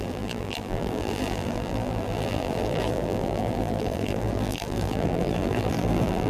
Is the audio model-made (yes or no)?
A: yes